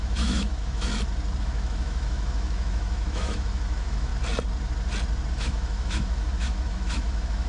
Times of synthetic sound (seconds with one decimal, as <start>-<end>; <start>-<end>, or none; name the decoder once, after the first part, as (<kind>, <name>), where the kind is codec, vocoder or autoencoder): 0.0-0.9 (autoencoder, DAC-VAE); 1.4-4.1; 5.3-7.5